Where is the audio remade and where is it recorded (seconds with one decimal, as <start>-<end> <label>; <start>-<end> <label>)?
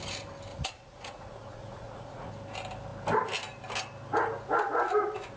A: 0.0-0.5 recorded; 0.5-2.3 remade; 2.3-5.4 recorded